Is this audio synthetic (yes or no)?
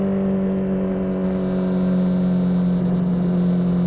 no